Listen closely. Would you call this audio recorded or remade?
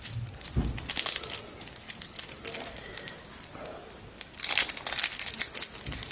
recorded